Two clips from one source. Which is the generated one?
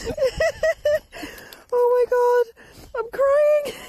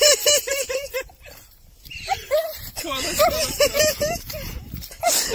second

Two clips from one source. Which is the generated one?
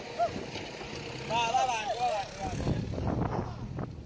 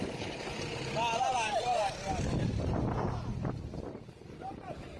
second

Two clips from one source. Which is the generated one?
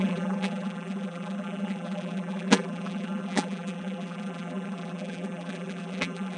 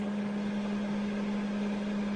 first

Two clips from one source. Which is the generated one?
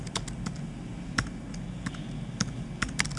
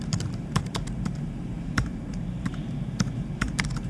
second